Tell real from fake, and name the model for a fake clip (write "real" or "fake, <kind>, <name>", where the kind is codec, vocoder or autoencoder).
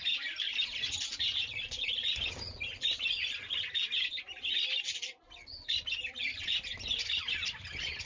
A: fake, vocoder, BigVGAN v2